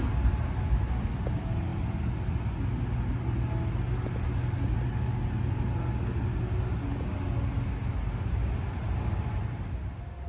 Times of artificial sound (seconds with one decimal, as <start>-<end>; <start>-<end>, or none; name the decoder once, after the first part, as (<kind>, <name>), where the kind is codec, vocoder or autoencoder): none